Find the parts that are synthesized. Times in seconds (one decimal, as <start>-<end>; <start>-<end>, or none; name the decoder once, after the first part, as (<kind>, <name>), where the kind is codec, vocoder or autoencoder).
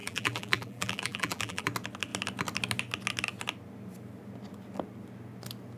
0.0-1.6 (vocoder, BigVGAN v2)